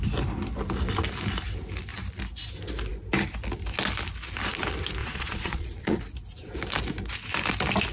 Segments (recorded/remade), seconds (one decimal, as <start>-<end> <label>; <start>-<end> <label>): 0.0-5.0 recorded; 5.0-6.0 remade; 6.0-7.9 recorded